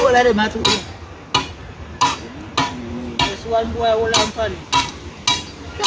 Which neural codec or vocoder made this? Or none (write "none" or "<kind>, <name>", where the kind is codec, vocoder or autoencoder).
none